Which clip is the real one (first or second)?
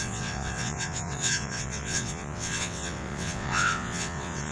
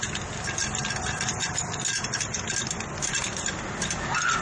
second